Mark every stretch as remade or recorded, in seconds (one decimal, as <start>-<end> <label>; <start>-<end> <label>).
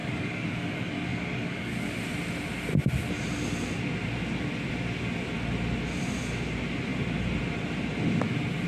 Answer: 0.0-2.0 remade; 2.0-8.7 recorded